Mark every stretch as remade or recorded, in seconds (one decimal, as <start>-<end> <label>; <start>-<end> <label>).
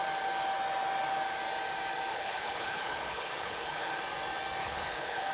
0.0-2.1 recorded; 2.1-4.0 remade; 4.0-4.6 recorded; 4.6-5.3 remade